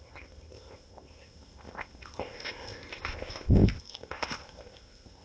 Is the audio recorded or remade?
remade